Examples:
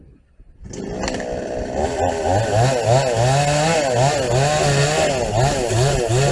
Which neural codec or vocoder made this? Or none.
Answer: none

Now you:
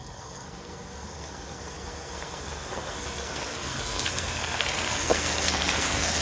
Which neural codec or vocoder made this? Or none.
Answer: codec, SNAC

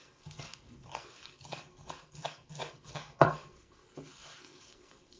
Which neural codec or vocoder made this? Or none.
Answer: codec, SNAC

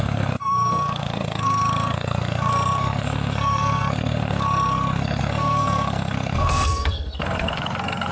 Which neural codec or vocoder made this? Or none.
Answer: codec, SNAC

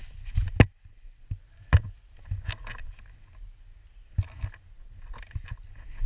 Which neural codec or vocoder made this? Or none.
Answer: none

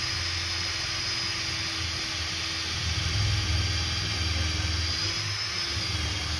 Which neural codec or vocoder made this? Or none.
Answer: none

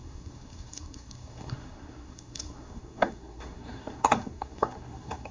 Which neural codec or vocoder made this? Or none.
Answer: codec, SNAC